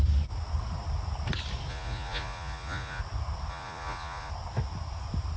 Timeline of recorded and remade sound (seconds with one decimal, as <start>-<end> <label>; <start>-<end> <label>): 0.0-1.7 recorded; 1.7-3.0 remade; 3.0-3.5 recorded; 3.5-4.3 remade; 4.3-5.4 recorded